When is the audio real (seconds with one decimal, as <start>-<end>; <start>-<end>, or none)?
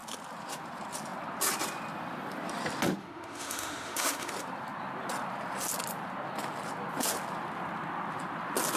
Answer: 0.0-3.0; 4.3-8.8